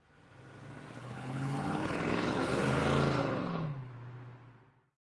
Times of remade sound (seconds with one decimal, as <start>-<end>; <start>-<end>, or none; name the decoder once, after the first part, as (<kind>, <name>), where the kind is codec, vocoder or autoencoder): 1.0-2.6 (codec, HILCodec); 3.2-3.9